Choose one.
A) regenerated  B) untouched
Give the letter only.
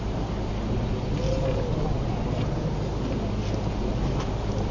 B